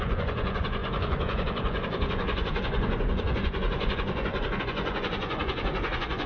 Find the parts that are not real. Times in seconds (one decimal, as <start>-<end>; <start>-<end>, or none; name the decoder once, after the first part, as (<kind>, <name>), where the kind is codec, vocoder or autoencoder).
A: 0.0-6.3 (vocoder, Vocos)